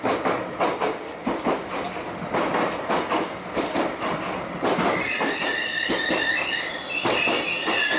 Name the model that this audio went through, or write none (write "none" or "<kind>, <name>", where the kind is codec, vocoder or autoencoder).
none